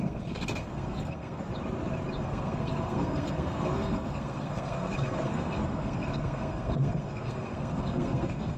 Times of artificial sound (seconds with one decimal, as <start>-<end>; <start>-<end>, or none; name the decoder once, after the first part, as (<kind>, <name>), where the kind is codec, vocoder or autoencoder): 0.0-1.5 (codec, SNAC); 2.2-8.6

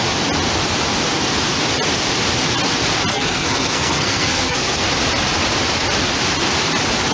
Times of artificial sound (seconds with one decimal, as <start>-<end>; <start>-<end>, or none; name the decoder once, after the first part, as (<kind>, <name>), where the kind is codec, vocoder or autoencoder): 3.1-4.9 (codec, SNAC)

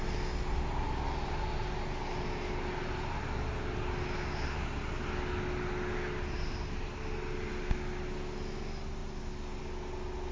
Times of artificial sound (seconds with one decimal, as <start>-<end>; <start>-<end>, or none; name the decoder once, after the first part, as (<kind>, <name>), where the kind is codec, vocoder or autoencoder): none

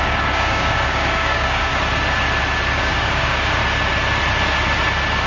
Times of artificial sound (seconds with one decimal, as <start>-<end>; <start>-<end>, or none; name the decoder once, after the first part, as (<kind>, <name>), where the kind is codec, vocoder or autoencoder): 0.0-1.7 (codec, DAC); 2.8-3.6

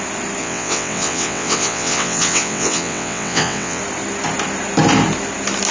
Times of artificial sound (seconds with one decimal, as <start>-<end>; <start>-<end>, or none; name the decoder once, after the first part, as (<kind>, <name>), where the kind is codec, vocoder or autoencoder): 0.4-3.8 (vocoder, WaveNeXt)

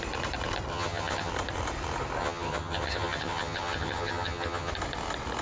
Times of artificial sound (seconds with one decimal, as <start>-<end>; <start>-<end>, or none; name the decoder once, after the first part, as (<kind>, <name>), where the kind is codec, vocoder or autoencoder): 0.7-1.3 (vocoder, HiFi-GAN); 2.2-4.7

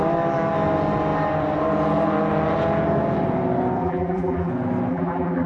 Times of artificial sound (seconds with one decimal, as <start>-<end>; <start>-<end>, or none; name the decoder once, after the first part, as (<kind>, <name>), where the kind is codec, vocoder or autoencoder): 3.8-4.5 (vocoder, BigVGAN v2); 4.9-5.5